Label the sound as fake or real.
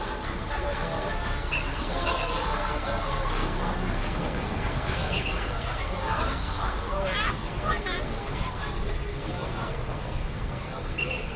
fake